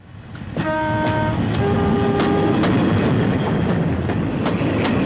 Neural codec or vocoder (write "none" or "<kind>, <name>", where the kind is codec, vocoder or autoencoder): none